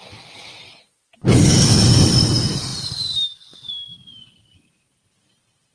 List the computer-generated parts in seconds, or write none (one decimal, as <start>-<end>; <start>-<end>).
none